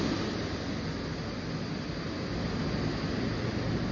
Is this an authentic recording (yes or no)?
yes